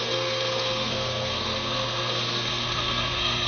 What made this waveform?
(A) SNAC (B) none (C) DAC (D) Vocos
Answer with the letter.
A